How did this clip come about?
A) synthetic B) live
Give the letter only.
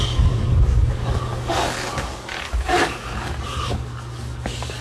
A